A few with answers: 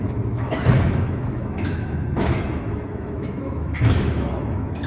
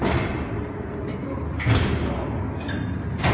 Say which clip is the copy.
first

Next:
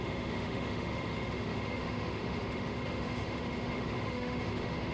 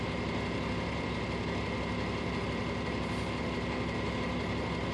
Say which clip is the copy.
first